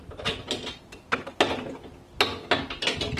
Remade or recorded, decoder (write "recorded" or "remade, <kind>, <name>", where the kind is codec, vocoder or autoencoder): recorded